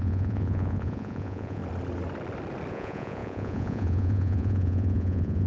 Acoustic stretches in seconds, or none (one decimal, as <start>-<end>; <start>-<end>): 1.6-2.7